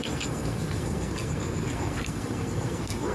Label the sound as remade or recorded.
remade